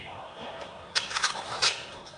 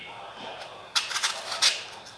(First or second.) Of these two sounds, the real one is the second